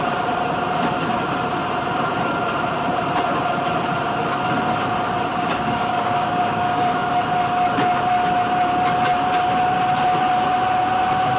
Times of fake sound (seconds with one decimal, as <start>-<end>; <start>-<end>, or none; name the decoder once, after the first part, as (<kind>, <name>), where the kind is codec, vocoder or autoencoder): 5.3-7.1 (codec, DAC)